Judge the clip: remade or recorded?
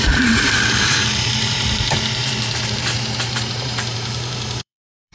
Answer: remade